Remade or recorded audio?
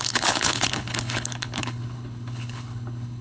remade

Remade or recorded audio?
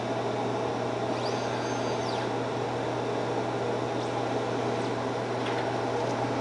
recorded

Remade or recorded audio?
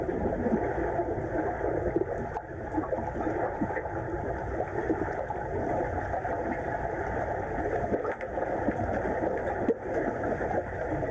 recorded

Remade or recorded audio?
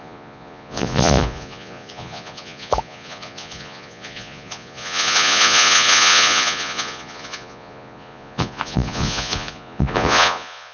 remade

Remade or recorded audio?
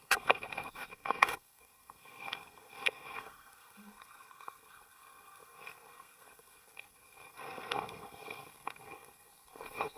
remade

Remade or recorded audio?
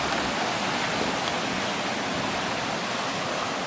recorded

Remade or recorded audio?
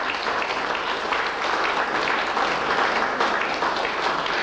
recorded